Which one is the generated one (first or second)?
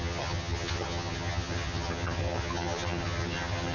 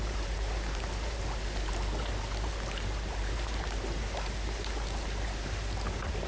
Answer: first